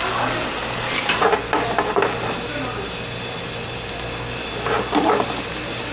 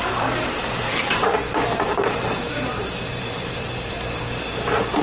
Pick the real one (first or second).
first